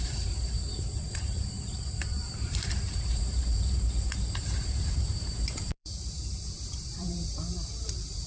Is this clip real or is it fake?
fake